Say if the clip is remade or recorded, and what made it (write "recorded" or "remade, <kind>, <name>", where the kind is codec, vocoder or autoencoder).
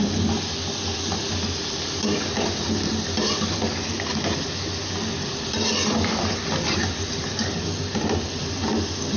recorded